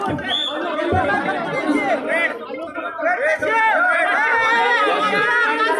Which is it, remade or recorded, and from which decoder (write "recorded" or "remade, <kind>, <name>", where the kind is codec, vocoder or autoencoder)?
recorded